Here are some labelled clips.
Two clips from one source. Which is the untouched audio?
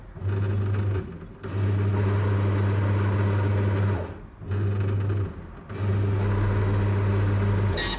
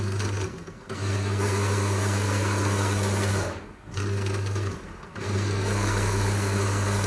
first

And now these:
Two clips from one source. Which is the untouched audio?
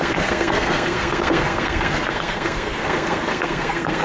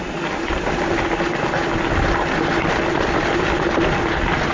second